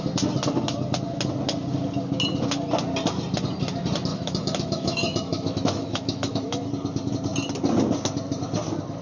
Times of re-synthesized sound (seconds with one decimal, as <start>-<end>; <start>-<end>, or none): 4.1-6.7